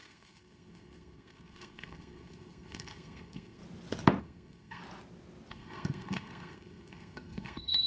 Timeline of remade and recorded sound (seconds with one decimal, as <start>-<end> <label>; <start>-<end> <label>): 0.0-3.6 remade; 3.6-4.2 recorded; 4.2-4.8 remade; 4.8-5.5 recorded; 5.5-7.9 remade

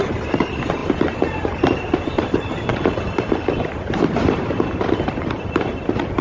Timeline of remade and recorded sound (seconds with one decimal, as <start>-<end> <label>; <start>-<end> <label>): 0.0-2.7 remade; 2.7-3.6 recorded; 3.6-6.2 remade

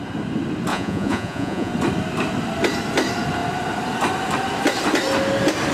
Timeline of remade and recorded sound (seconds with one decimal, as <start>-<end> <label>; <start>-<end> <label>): 0.0-0.7 recorded; 0.7-1.7 remade; 1.7-5.7 recorded

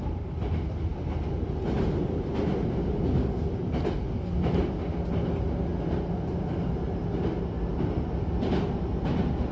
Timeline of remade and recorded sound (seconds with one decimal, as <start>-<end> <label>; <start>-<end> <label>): 0.0-9.5 recorded

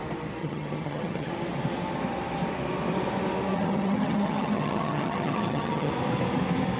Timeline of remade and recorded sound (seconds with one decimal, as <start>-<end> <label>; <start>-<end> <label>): 0.0-0.4 recorded; 0.4-1.3 remade; 1.3-3.5 recorded; 3.5-5.9 remade; 5.9-6.8 recorded

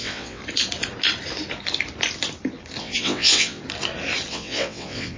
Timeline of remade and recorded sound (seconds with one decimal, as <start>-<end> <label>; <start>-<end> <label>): 0.0-0.4 remade; 0.4-2.8 recorded; 2.8-3.6 remade; 3.6-4.3 recorded; 4.3-5.2 remade